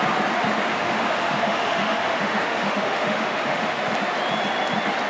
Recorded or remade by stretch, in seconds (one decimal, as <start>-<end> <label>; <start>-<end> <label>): 0.0-0.7 recorded; 0.7-3.8 remade; 3.8-5.1 recorded